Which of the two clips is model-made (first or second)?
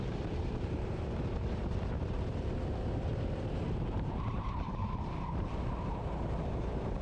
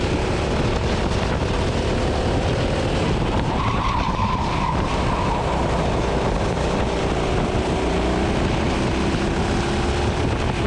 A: first